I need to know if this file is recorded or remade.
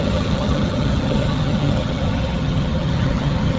remade